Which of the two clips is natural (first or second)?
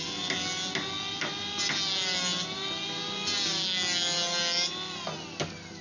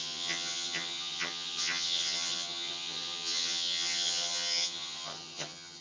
first